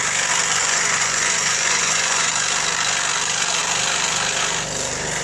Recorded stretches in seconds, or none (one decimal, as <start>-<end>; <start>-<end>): 0.0-0.6; 2.3-5.2